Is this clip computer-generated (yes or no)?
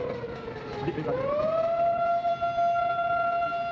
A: no